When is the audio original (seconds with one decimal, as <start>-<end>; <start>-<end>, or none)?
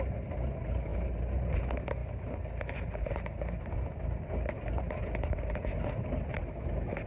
0.0-7.1